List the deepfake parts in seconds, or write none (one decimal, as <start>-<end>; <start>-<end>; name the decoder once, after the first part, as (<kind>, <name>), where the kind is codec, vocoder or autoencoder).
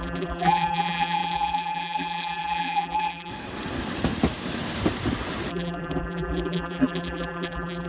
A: 0.0-3.3 (vocoder, BigVGAN v2); 5.5-7.9